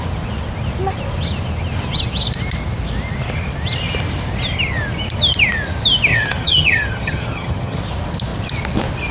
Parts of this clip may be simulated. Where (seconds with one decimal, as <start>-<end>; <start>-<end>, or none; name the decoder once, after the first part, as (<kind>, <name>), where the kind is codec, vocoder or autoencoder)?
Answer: 6.1-7.8 (vocoder, HiFi-GAN)